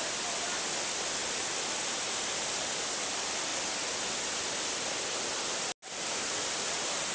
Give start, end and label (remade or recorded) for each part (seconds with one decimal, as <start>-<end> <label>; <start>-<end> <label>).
0.0-7.1 recorded